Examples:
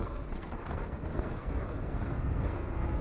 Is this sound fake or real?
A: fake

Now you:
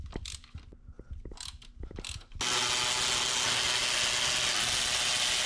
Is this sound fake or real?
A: real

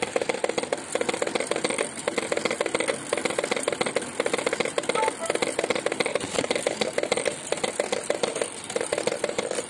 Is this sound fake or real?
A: real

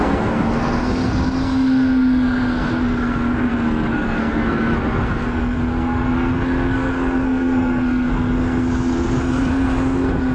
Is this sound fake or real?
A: fake